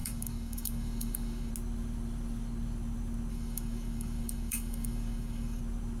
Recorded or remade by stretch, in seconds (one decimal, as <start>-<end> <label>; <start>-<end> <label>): 0.0-1.5 remade; 1.5-3.3 recorded; 3.3-5.6 remade; 5.6-6.0 recorded